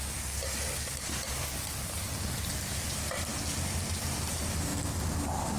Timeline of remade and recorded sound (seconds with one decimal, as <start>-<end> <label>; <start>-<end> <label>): 0.0-5.6 recorded